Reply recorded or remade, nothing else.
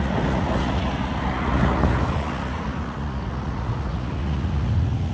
remade